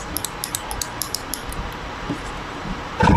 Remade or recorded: remade